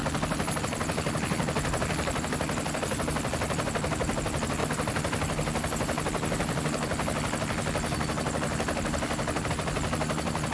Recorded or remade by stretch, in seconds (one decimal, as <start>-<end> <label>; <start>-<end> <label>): 0.0-10.5 recorded